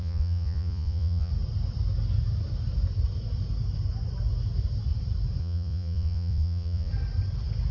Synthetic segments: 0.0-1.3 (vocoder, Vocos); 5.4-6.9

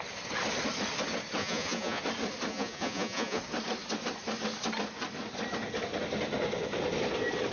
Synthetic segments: 1.4-2.0 (vocoder, Vocos); 2.5-3.4

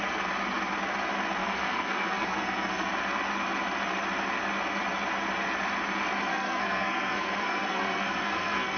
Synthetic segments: 1.4-2.9 (codec, SNAC); 6.3-8.8

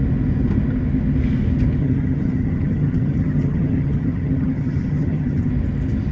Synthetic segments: 1.8-5.5 (vocoder, HiFi-GAN)

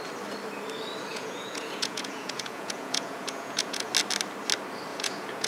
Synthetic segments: 1.1-3.9 (vocoder, Vocos); 4.9-5.5

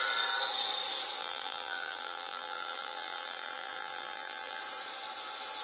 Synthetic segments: 1.2-4.6 (vocoder, BigVGAN v2)

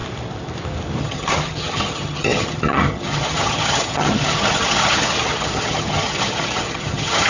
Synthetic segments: 1.0-7.3 (vocoder, HiFi-GAN)